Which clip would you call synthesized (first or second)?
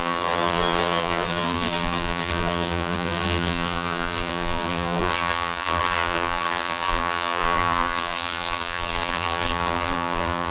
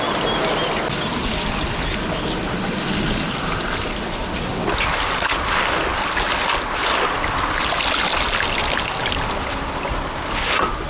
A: first